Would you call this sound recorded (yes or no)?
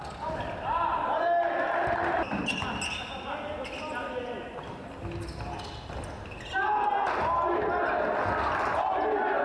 yes